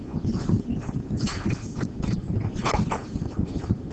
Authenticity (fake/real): real